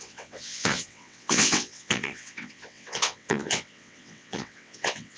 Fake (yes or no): yes